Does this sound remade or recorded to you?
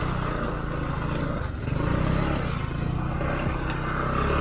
recorded